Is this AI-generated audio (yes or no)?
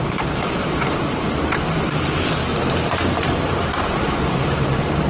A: yes